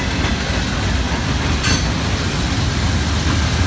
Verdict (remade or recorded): recorded